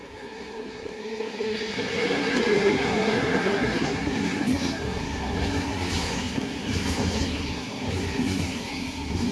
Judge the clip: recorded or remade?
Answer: remade